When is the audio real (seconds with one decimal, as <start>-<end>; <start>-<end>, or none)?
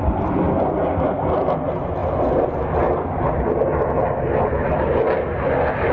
0.0-5.9